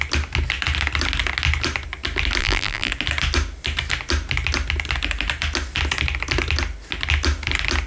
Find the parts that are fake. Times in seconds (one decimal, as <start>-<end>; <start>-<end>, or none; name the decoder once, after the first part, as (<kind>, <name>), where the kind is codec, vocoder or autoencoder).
2.4-2.9 (vocoder, BigVGAN v2)